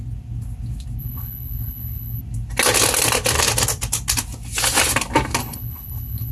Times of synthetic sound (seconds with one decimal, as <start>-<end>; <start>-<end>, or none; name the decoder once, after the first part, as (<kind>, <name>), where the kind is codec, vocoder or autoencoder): 1.0-2.2 (codec, HILCodec); 5.4-6.3